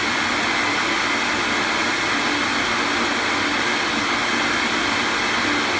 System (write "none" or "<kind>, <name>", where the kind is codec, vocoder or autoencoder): none